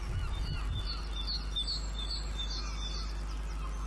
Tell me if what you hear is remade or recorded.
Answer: recorded